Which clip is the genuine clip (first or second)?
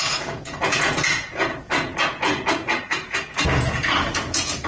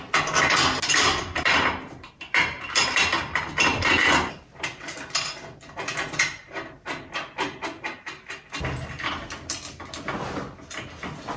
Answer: second